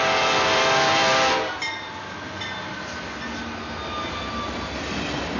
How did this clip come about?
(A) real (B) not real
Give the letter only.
A